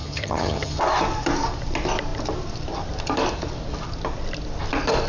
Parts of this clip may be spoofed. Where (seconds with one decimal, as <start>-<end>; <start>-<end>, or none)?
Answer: 0.0-0.8